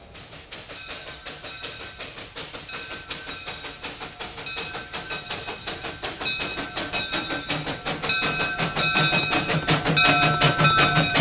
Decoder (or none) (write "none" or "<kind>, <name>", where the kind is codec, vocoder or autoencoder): none